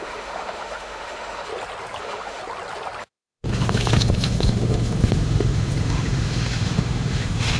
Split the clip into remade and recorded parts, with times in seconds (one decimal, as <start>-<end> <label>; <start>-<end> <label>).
0.0-1.5 remade; 1.5-2.0 recorded; 2.0-2.4 remade; 2.4-3.0 recorded; 3.0-7.6 remade